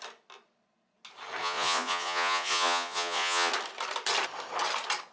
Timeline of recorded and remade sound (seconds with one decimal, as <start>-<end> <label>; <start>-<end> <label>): 0.0-1.4 recorded; 1.4-3.5 remade; 3.5-5.1 recorded